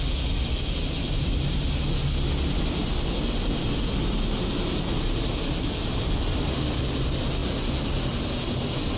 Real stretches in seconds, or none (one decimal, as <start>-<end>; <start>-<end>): 0.0-9.0